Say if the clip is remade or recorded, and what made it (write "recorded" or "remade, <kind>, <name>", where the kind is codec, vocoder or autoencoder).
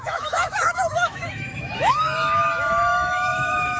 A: remade, autoencoder, DAC-VAE